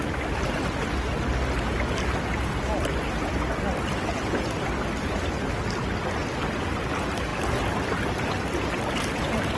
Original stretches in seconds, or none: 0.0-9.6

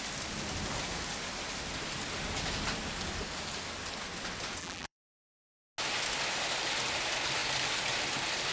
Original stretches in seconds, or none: 0.0-4.6; 5.2-8.5

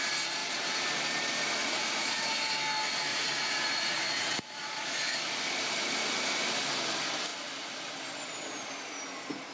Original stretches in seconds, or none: 0.0-1.6; 2.3-3.1; 5.0-9.5

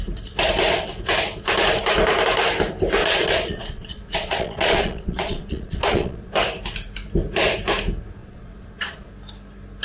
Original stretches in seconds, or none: 0.0-3.0; 6.3-8.2; 9.1-9.8

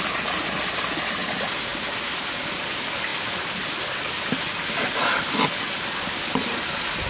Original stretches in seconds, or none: 0.0-7.1

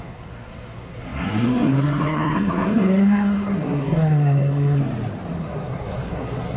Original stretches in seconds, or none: 4.8-5.4

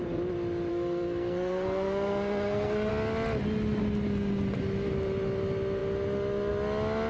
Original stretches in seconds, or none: 0.0-0.7; 2.9-7.1